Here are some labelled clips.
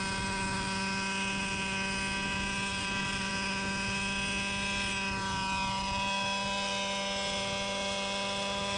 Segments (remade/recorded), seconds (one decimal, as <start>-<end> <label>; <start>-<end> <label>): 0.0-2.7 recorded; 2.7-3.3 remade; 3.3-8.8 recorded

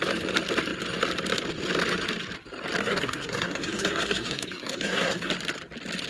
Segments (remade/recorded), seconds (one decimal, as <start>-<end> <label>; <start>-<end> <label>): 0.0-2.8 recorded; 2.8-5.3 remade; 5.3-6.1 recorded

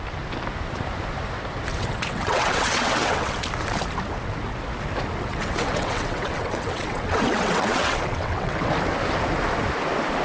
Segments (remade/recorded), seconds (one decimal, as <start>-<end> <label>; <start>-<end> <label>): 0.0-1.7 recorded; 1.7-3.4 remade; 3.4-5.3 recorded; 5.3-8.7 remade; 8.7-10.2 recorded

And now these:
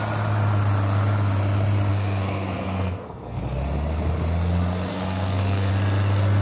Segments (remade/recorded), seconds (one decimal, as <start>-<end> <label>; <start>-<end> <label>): 0.0-1.9 recorded; 1.9-3.4 remade; 3.4-4.9 recorded; 4.9-5.7 remade; 5.7-6.4 recorded

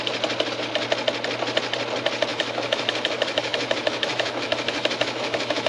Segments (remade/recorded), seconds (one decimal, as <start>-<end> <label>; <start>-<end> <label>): 0.0-2.3 recorded; 2.3-5.7 remade

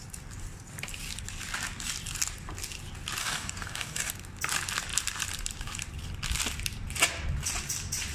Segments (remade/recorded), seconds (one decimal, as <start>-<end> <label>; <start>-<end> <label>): 0.0-3.2 recorded; 3.2-4.1 remade; 4.1-8.1 recorded